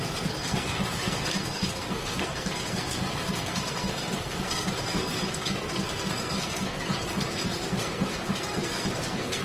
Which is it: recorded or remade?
remade